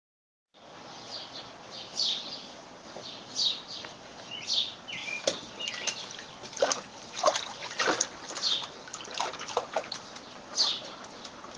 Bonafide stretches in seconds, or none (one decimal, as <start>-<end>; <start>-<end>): 2.4-11.6

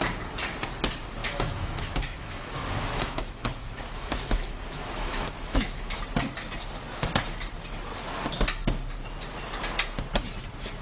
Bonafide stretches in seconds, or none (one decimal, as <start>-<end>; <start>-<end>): 0.0-1.2; 5.9-10.8

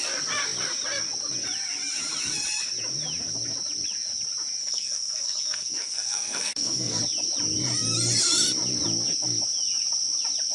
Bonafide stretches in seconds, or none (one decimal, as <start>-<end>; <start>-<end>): 0.0-4.6; 7.0-10.5